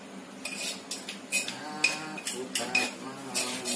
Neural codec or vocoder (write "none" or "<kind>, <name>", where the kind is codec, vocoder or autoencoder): none